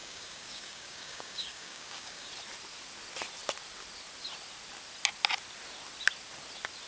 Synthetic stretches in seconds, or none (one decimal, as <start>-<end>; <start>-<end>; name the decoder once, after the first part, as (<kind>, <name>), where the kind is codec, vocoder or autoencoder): 0.0-2.3 (codec, DAC)